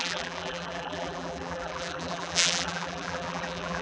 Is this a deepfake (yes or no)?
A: yes